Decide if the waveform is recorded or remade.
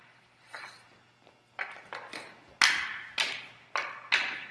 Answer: recorded